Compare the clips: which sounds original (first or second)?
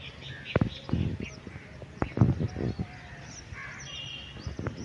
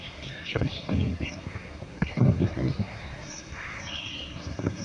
first